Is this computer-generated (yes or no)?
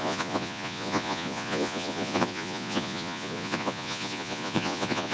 yes